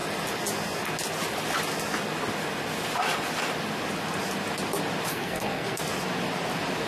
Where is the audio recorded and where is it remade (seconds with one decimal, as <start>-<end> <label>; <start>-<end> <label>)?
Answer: 0.0-5.1 recorded; 5.1-5.8 remade; 5.8-6.9 recorded